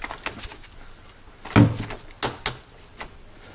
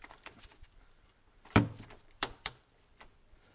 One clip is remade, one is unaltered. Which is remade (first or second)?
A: second